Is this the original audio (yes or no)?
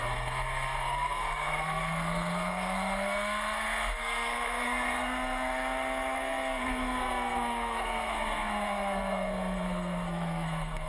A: no